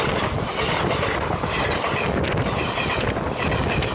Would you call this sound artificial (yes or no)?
no